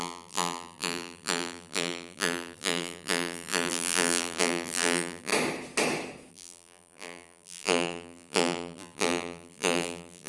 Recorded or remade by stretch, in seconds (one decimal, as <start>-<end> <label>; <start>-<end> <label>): 0.0-5.3 remade; 5.3-6.3 recorded; 6.3-10.3 remade